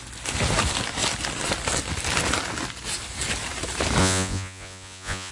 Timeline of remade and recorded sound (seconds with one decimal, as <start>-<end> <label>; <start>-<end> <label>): 0.0-4.0 recorded; 4.0-5.3 remade